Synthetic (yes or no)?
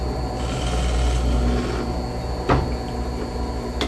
no